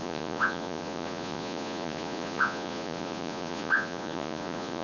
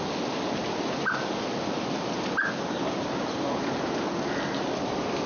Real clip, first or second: second